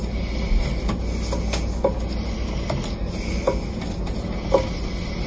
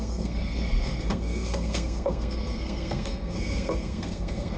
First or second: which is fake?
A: second